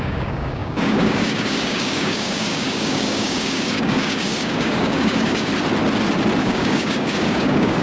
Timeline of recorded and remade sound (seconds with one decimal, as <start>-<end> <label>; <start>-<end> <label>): 0.0-5.5 remade; 5.5-6.4 recorded; 6.4-7.8 remade